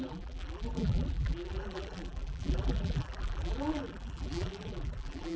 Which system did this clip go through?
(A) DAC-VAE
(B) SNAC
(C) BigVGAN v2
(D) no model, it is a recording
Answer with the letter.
C